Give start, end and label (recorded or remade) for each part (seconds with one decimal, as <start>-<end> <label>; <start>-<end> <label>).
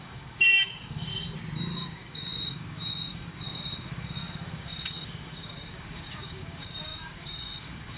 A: 0.0-1.1 remade; 1.1-1.7 recorded; 1.7-8.0 remade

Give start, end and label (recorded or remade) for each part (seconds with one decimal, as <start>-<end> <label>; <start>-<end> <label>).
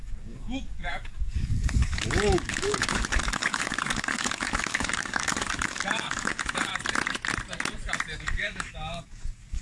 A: 0.0-6.7 remade; 6.7-8.2 recorded; 8.2-9.6 remade